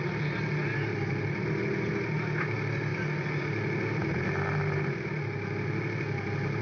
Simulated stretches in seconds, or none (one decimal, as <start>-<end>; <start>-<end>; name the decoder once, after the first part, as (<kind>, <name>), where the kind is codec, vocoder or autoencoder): none